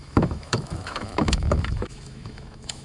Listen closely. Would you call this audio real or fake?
fake